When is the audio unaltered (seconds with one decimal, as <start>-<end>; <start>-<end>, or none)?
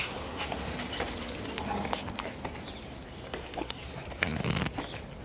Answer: 0.7-3.4; 4.4-5.2